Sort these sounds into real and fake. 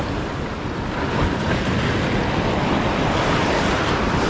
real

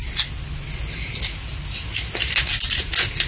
real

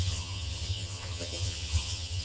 fake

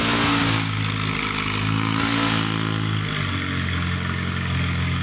real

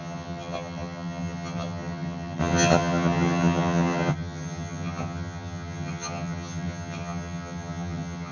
fake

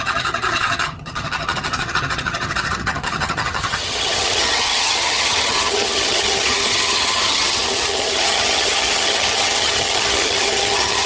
fake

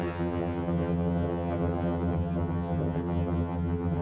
fake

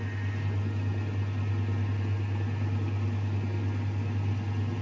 real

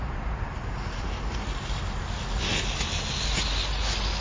real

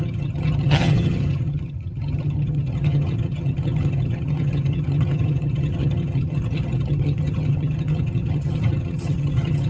fake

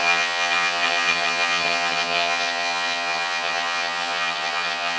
fake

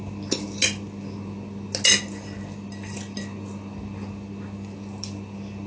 real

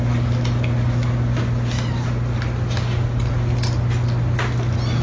real